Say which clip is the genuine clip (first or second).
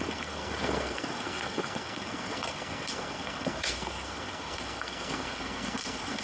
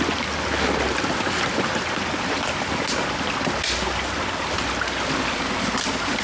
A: second